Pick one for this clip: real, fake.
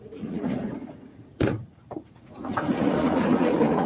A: fake